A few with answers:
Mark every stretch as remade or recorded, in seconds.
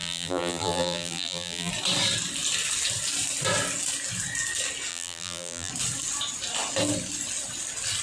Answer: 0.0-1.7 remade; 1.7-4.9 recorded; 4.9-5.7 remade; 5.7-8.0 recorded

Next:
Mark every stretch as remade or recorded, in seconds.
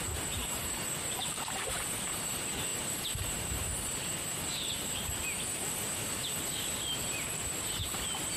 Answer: 0.0-0.4 remade; 0.4-1.2 recorded; 1.2-7.8 remade; 7.8-8.4 recorded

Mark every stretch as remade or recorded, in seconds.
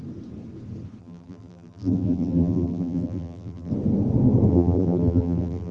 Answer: 0.0-1.0 recorded; 1.0-3.7 remade; 3.7-4.5 recorded; 4.5-5.7 remade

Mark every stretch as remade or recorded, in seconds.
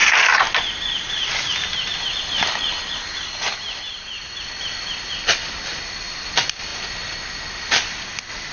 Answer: 0.0-5.1 recorded; 5.1-6.7 remade; 6.7-8.0 recorded; 8.0-8.5 remade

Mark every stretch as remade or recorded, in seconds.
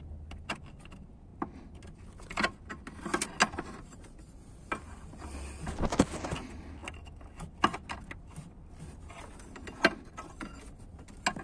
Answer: 0.0-11.4 recorded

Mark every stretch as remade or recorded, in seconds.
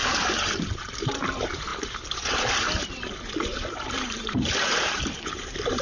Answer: 0.0-5.8 remade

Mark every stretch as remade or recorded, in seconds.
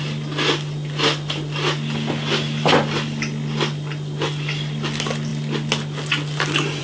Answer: 0.0-6.8 recorded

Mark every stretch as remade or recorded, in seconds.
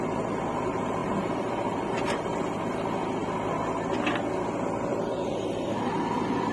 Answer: 0.0-1.0 recorded; 1.0-2.6 remade; 2.6-4.9 recorded; 4.9-6.0 remade; 6.0-6.5 recorded